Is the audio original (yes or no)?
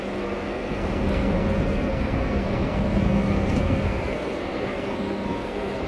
no